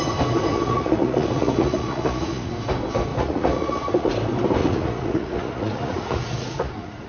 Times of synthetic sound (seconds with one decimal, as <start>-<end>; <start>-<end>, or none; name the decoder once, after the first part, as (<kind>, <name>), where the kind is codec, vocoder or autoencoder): 0.5-2.5 (vocoder, Vocos); 3.1-4.1; 4.6-7.1